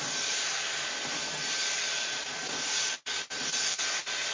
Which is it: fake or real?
fake